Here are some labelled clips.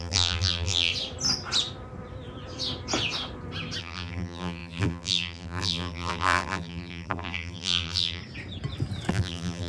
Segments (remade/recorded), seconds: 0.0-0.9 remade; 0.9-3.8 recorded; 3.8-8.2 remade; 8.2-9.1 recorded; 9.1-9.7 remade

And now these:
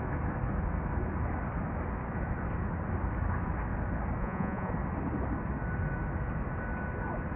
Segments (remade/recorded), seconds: 0.0-4.2 recorded; 4.2-4.7 remade; 4.7-7.4 recorded

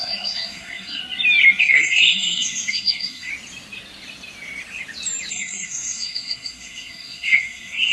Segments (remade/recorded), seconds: 0.0-1.0 remade; 1.0-1.6 recorded; 1.6-3.3 remade; 3.3-5.3 recorded; 5.3-7.9 remade

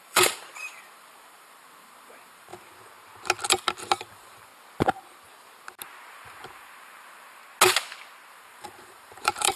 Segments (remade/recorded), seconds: 0.0-2.5 remade; 2.5-4.0 recorded; 4.0-4.5 remade; 4.5-6.1 recorded; 6.1-7.4 remade; 7.4-8.3 recorded; 8.3-9.6 remade